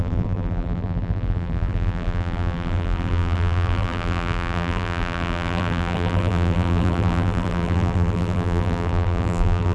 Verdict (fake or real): fake